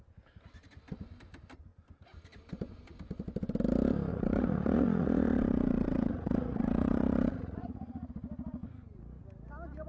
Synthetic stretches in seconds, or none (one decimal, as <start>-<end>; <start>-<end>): 4.1-8.1